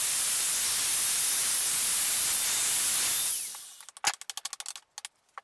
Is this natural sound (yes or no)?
yes